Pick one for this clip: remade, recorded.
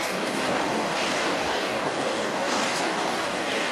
remade